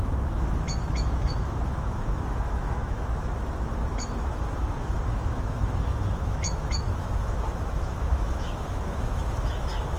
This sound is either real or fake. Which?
fake